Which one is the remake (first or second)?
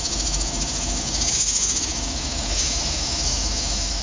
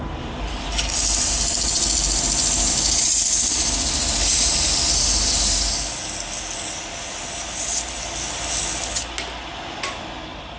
first